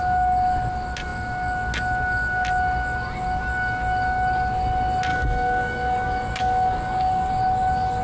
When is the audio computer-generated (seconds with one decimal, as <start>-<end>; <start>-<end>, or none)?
5.1-7.3

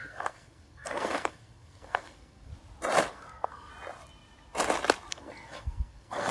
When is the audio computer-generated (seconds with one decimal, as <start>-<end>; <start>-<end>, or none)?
0.0-2.5; 3.1-3.7; 5.1-6.3

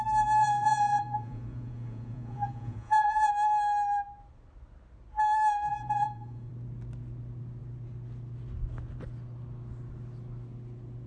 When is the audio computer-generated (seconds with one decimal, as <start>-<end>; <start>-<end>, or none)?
0.4-3.3; 5.7-6.5

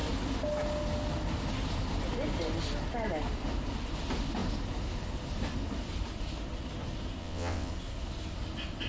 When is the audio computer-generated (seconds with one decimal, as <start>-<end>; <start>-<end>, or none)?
7.2-7.7

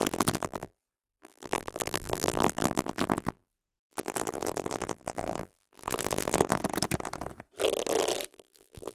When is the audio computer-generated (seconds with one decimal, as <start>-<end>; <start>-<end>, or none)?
0.0-6.6; 8.3-8.9